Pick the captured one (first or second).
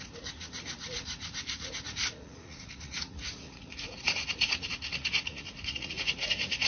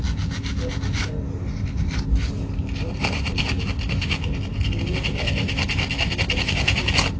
second